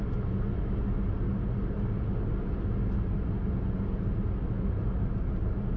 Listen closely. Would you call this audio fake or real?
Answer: real